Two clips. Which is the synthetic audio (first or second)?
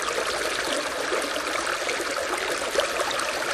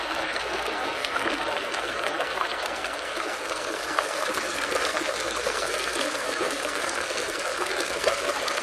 second